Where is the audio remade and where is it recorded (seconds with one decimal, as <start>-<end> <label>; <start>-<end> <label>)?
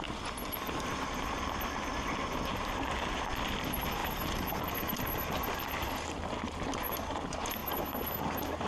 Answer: 0.0-4.0 recorded; 4.0-4.6 remade; 4.6-8.7 recorded